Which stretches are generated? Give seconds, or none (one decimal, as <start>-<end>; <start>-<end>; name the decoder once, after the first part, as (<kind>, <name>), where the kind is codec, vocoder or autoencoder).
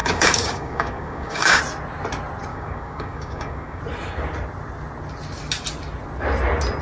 0.0-1.6 (codec, DAC); 2.5-3.8